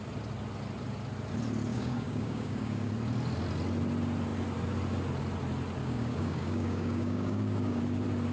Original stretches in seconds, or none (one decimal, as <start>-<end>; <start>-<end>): 0.0-1.7; 2.9-5.8; 7.8-8.3